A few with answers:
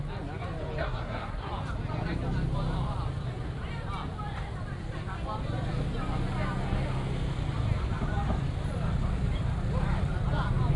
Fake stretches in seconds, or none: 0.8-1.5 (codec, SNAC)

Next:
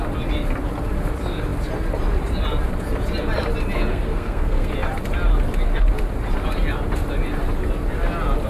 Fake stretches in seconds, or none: 3.9-4.7 (codec, SNAC)

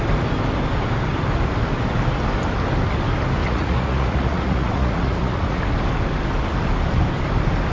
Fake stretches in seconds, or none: 3.4-5.6 (vocoder, Vocos)

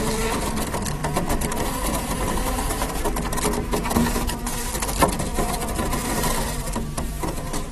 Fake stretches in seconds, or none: 4.0-4.7 (vocoder, BigVGAN v2); 5.3-6.7

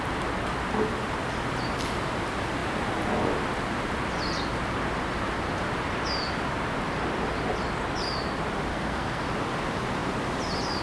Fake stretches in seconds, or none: 8.7-9.2 (codec, SNAC)

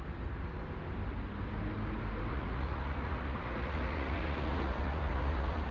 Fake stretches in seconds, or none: 2.3-5.7 (vocoder, Vocos)

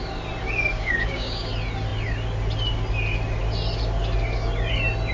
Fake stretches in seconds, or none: 0.7-1.5 (codec, DAC)

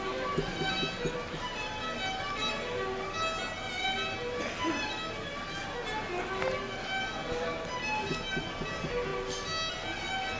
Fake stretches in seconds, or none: none